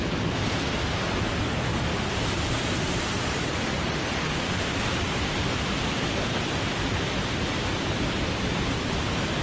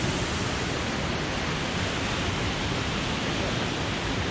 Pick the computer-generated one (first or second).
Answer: first